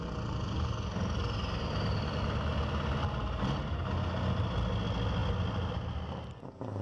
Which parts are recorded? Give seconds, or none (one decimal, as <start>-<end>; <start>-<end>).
0.0-6.8